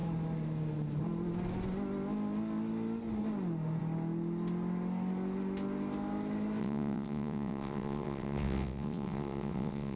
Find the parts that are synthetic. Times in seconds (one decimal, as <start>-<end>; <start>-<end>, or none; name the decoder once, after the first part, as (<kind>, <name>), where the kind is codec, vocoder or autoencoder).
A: 6.6-10.0 (vocoder, WaveNeXt)